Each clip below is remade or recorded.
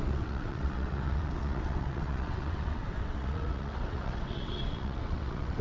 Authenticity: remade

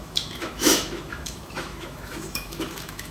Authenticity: remade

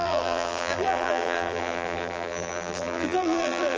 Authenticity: remade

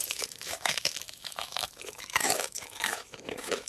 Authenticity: remade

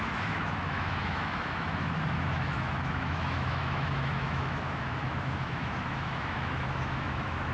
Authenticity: remade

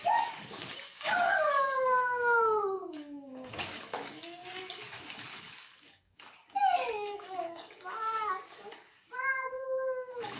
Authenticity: remade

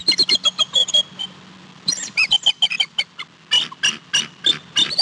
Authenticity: recorded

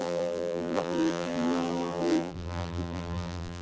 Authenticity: remade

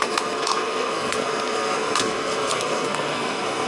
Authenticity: remade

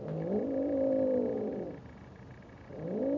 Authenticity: recorded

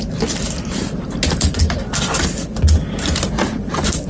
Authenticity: recorded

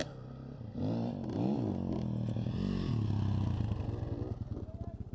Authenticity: recorded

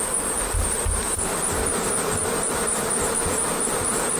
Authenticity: remade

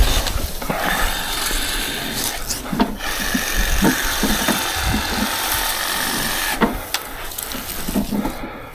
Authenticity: recorded